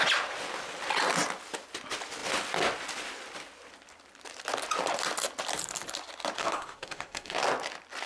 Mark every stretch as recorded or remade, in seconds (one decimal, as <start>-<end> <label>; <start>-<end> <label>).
0.0-6.4 recorded; 6.4-7.4 remade; 7.4-8.1 recorded